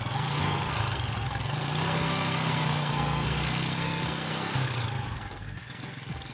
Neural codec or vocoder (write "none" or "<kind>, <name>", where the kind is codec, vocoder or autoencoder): codec, SNAC